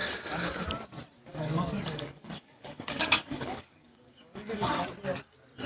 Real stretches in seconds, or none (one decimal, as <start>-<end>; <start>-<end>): 0.0-1.3; 4.7-5.7